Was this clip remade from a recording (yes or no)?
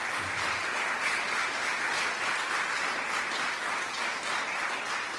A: no